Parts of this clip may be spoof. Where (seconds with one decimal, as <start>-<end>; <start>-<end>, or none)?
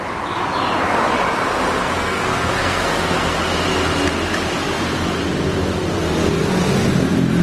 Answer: 1.8-3.4